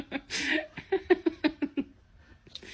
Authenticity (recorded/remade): recorded